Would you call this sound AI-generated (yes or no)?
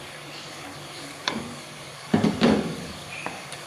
yes